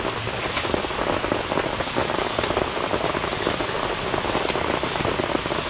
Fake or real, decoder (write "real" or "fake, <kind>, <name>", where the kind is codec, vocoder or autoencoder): real